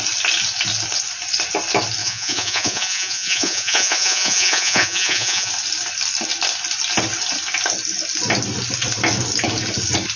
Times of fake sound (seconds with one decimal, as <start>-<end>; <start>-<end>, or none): 2.0-5.5